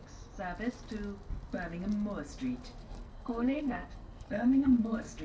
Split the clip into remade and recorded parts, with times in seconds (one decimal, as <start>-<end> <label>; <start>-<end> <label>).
0.0-2.8 recorded; 2.8-5.2 remade